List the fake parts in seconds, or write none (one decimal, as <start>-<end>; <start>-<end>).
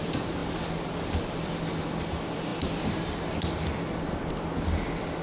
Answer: 2.5-3.6